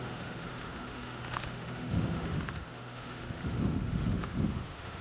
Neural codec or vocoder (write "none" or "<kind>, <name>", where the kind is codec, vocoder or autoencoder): autoencoder, DAC-VAE